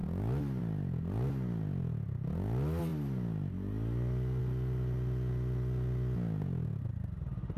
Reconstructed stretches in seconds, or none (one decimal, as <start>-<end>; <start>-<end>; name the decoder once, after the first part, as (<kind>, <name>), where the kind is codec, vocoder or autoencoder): none

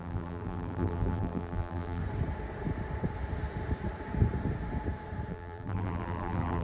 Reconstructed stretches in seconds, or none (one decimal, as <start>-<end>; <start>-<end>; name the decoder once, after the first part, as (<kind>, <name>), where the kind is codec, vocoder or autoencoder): 0.0-2.0 (vocoder, BigVGAN v2); 5.3-6.6

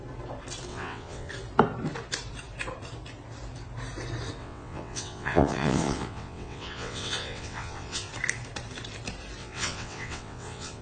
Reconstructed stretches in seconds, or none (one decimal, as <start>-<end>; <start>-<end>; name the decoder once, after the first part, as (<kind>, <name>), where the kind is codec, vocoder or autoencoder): 0.7-1.3 (vocoder, WaveNeXt); 4.4-8.1; 9.4-10.8

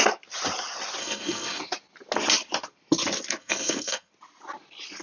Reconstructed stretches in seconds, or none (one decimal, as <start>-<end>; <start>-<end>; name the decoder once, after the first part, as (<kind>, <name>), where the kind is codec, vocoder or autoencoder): 1.0-1.6 (codec, SNAC); 3.4-4.1

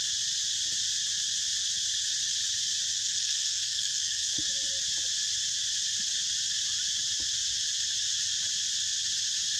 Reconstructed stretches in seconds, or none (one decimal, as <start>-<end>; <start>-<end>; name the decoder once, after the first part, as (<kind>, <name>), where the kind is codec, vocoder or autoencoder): 2.9-4.4 (codec, SNAC)